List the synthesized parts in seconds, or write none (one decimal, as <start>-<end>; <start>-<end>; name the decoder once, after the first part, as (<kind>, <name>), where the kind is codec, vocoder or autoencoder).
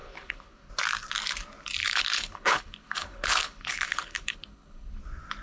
0.0-0.7 (codec, HILCodec); 1.8-5.0